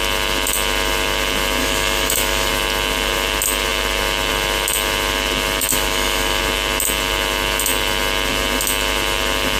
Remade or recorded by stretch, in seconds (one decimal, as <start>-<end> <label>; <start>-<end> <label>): 0.0-1.6 recorded; 1.6-2.5 remade; 2.5-5.7 recorded; 5.7-6.4 remade; 6.4-9.6 recorded